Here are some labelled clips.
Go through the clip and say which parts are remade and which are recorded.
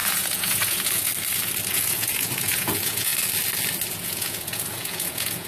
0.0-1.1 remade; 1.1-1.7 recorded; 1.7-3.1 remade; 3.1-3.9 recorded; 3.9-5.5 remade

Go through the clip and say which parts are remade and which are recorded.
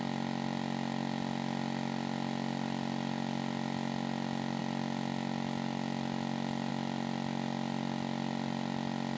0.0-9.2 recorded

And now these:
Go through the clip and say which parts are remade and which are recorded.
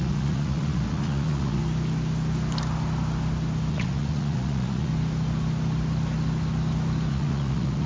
0.0-1.6 remade; 1.6-3.7 recorded; 3.7-4.9 remade; 4.9-7.1 recorded; 7.1-7.9 remade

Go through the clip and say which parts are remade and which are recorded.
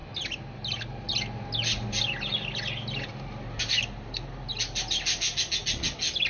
0.0-6.3 recorded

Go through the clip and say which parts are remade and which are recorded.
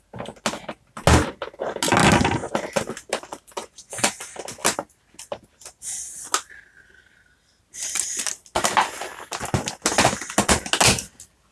0.0-3.6 recorded; 3.6-4.1 remade; 4.1-11.5 recorded